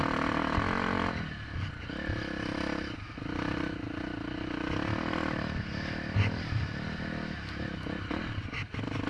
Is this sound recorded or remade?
recorded